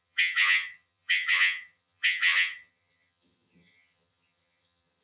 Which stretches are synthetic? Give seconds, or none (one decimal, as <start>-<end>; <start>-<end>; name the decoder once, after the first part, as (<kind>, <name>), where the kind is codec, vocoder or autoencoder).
0.0-5.0 (vocoder, HiFi-GAN)